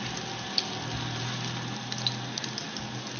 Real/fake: real